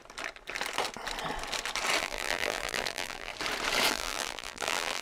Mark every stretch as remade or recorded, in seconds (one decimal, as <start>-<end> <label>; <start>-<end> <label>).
0.0-2.0 recorded; 2.0-3.3 remade; 3.3-3.9 recorded; 3.9-5.0 remade